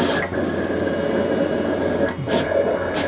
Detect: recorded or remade recorded